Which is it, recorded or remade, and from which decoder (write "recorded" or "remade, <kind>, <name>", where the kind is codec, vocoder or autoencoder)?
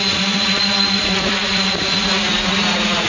remade, vocoder, Vocos